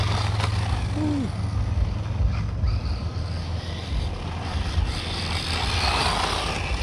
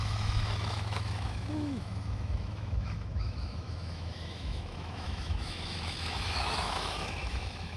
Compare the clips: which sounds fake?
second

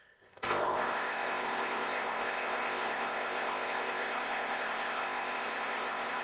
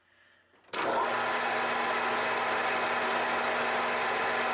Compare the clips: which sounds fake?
first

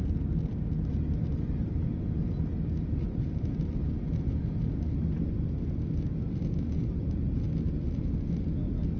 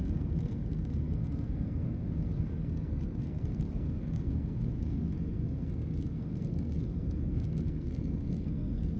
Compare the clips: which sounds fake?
second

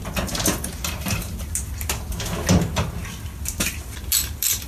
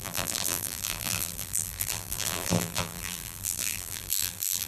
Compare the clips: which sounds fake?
second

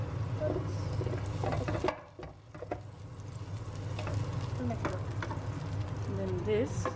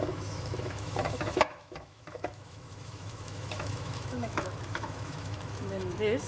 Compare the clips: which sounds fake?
second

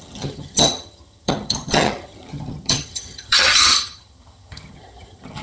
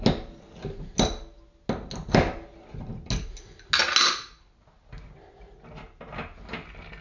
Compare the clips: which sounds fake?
first